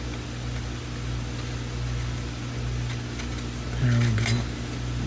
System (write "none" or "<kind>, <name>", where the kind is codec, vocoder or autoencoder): none